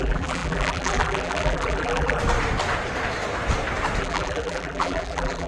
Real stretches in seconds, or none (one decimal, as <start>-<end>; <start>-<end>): 2.2-4.0